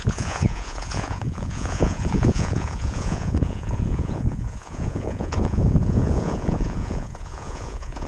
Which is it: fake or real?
fake